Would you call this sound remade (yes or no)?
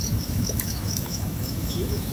yes